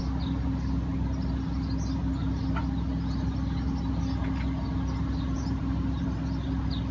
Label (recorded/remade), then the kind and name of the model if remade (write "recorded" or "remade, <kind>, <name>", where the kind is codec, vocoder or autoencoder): recorded